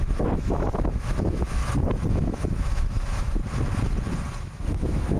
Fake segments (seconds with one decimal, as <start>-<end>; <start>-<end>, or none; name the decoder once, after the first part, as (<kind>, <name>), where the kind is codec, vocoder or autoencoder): 0.0-1.6 (autoencoder, DAC-VAE); 2.1-3.4; 4.4-5.2